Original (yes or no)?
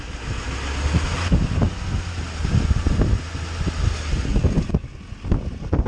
yes